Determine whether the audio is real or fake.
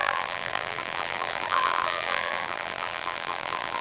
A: fake